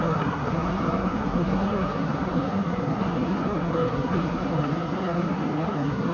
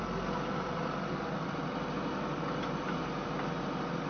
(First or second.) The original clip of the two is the second